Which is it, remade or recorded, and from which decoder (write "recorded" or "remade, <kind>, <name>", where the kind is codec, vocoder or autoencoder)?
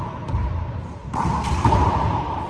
recorded